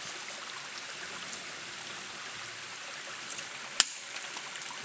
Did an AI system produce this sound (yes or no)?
no